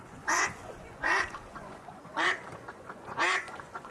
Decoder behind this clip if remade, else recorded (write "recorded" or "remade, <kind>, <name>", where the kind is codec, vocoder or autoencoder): remade, vocoder, Vocos